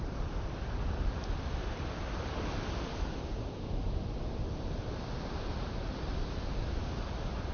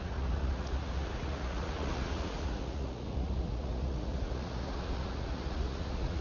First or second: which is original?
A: first